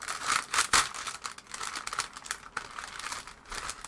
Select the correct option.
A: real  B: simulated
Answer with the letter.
A